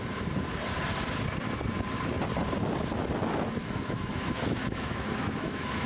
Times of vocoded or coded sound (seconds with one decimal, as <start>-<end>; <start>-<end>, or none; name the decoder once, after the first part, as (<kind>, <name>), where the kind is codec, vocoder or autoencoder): 3.6-5.9 (autoencoder, DAC-VAE)